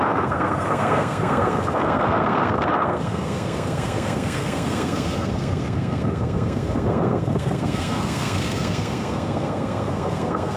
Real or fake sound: fake